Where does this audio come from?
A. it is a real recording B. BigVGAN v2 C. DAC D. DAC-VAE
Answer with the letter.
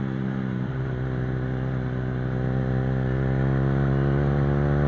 A